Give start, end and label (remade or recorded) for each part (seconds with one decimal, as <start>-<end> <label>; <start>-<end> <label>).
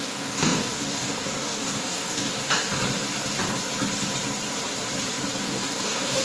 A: 0.0-2.4 remade; 2.4-5.4 recorded; 5.4-6.2 remade